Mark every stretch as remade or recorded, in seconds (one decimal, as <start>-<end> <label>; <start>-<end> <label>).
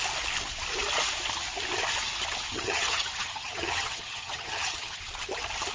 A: 0.0-2.5 recorded; 2.5-5.0 remade; 5.0-5.7 recorded